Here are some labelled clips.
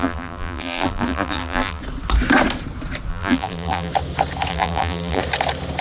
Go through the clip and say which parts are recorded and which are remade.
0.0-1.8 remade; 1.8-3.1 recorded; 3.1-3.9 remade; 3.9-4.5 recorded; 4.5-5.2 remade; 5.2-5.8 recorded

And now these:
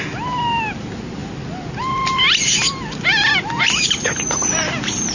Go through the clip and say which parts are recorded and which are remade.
0.0-5.1 recorded

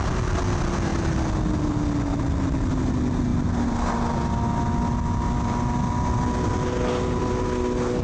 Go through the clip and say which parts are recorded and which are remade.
0.0-8.0 recorded